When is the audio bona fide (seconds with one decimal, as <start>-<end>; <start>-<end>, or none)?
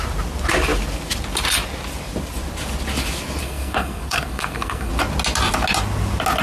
0.0-3.4; 4.9-6.4